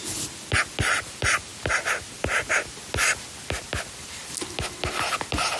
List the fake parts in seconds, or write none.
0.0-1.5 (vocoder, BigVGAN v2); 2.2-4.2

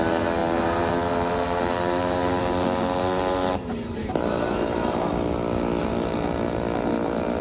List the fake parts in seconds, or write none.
0.0-5.1 (vocoder, BigVGAN v2); 5.8-7.4

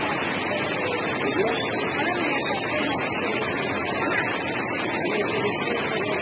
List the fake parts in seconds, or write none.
none

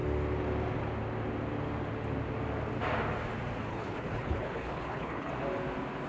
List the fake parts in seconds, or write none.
3.7-5.3 (codec, HILCodec)